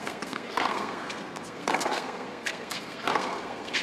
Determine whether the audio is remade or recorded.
remade